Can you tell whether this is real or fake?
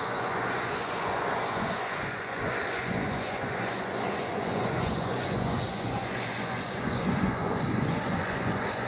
fake